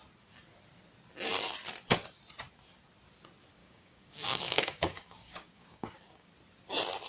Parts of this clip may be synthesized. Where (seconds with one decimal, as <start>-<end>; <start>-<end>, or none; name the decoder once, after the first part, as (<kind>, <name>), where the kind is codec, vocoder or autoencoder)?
3.6-6.3 (codec, DAC)